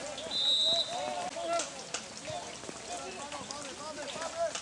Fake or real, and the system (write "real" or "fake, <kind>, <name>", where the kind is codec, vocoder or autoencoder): real